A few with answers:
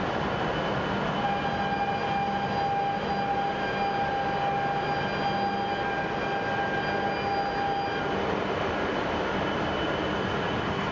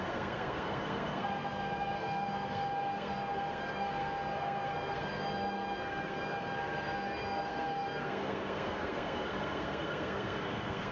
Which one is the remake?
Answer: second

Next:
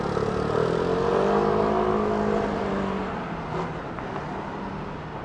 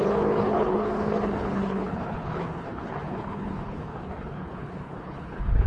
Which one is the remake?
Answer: second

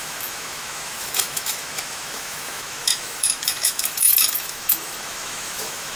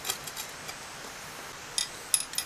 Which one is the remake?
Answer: first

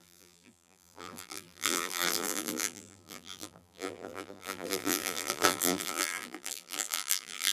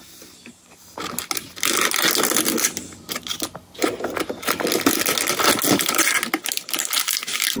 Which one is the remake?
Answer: first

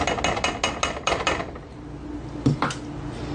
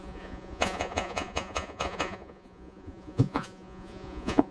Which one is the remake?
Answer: second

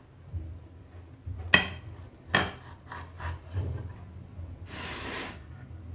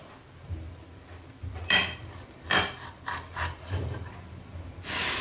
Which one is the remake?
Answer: second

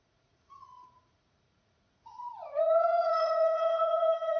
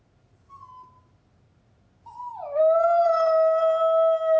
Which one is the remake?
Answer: first